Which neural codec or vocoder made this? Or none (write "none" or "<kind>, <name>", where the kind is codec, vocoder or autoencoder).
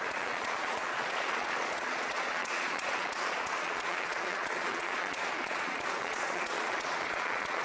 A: vocoder, Vocos